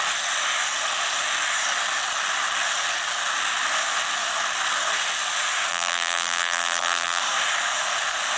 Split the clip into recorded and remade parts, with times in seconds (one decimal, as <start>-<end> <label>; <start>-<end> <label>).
0.0-5.7 recorded; 5.7-7.2 remade; 7.2-8.4 recorded